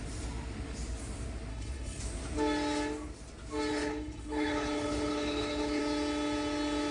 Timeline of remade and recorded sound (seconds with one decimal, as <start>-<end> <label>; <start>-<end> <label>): 0.0-1.5 recorded; 1.5-2.0 remade; 2.0-3.7 recorded; 3.7-5.8 remade; 5.8-6.9 recorded